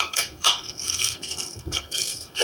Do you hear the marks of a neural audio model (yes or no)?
yes